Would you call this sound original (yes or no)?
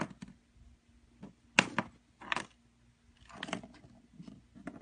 yes